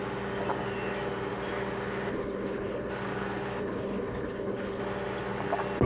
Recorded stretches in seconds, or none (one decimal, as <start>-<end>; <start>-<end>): 0.0-2.1; 2.9-3.6; 4.8-5.9